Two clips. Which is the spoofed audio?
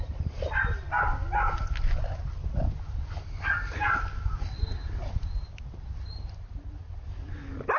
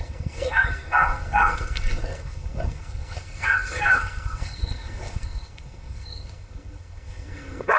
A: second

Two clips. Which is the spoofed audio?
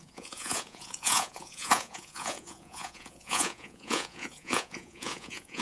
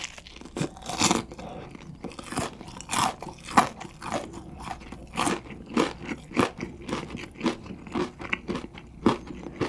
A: first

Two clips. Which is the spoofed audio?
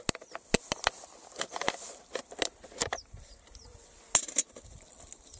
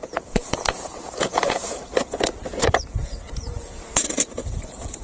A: second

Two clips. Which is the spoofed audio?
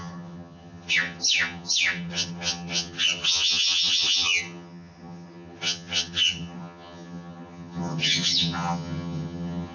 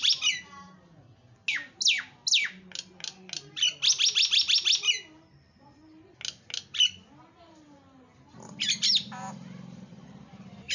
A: first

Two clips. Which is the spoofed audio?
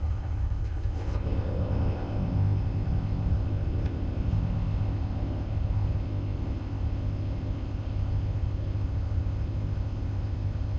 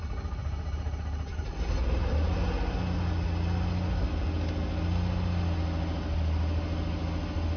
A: first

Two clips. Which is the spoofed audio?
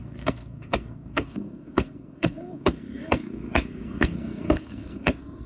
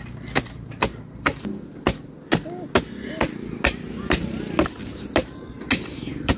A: first